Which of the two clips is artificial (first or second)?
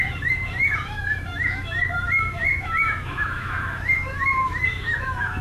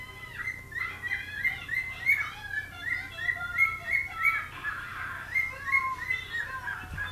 first